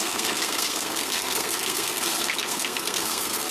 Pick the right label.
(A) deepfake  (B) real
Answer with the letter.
A